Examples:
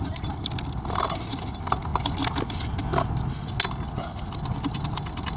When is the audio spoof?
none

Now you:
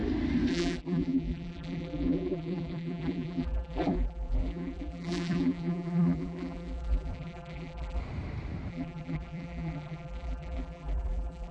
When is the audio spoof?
0.5-8.0 (vocoder, BigVGAN v2); 8.7-11.5

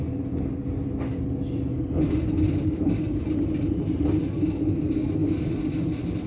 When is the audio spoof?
none

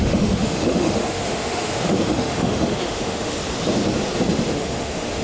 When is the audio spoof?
0.0-3.4 (autoencoder, DAC-VAE); 4.5-5.2

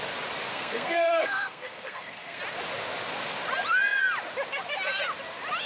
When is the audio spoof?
0.5-2.4 (codec, SNAC)

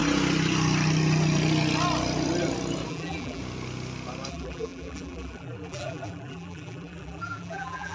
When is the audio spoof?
2.9-3.4 (vocoder, BigVGAN v2); 4.3-7.9

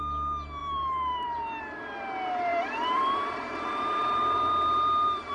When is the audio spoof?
0.6-1.6 (vocoder, BigVGAN v2); 2.5-5.3